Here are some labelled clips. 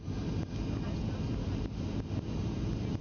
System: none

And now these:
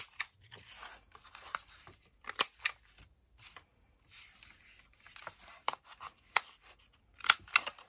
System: none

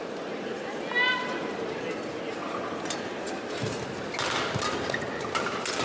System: none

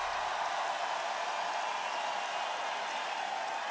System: none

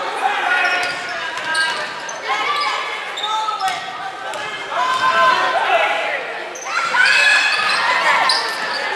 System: none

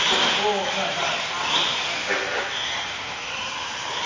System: none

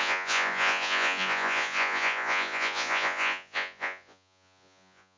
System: vocoder, Vocos